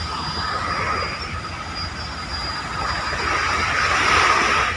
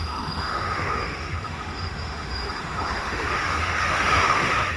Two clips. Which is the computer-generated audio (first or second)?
second